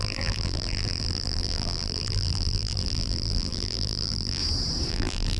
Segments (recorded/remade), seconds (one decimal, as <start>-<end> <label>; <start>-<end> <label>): 0.0-4.4 remade; 4.4-4.9 recorded; 4.9-5.4 remade